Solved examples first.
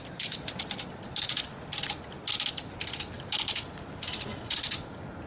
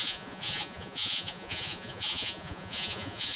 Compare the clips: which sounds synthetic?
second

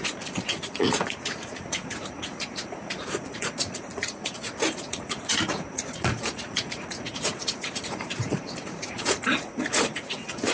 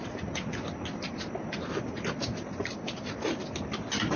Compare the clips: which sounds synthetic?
first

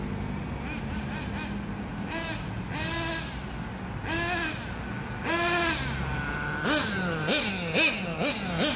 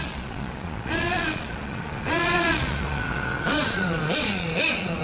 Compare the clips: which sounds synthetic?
second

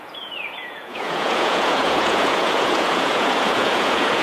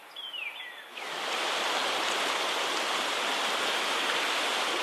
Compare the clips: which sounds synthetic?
first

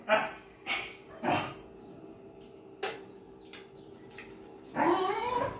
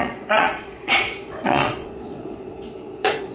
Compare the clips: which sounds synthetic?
second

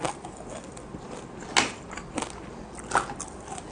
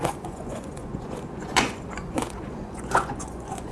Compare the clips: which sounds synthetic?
second